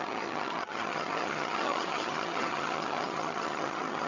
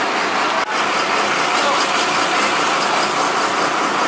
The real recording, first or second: second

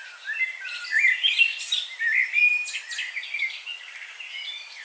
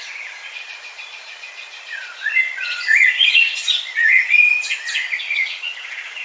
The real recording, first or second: first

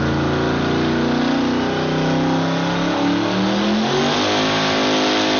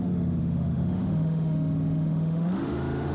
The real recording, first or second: first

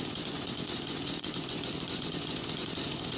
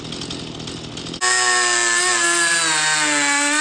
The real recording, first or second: second